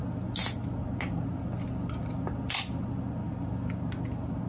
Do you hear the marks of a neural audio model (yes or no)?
no